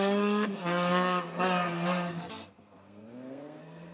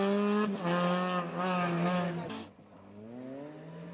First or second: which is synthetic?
first